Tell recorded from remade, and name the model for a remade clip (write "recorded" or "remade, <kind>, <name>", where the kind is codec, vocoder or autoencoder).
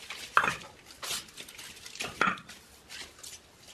recorded